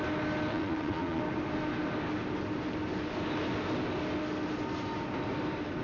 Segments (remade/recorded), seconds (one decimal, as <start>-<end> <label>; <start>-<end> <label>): 0.0-0.5 recorded; 0.5-1.2 remade; 1.2-5.8 recorded